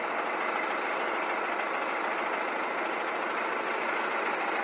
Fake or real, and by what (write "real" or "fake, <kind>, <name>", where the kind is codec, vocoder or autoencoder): real